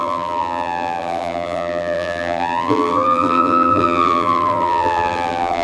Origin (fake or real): fake